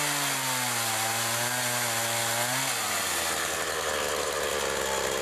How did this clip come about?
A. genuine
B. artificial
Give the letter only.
A